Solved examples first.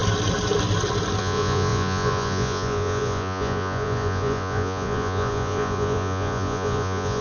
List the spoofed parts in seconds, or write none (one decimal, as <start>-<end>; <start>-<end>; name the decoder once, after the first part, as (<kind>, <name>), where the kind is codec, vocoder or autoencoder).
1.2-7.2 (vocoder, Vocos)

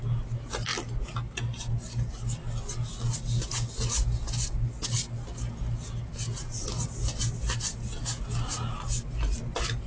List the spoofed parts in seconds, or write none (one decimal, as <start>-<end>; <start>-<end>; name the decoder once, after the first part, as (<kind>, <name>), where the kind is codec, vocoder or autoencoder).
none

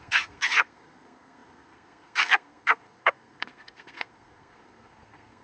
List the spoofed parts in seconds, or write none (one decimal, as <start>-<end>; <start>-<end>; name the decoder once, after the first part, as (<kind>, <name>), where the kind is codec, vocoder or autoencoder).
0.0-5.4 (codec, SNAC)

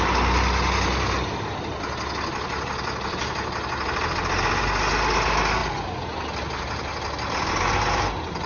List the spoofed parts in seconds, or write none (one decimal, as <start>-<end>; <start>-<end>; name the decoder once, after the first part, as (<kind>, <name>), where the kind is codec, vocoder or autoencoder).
none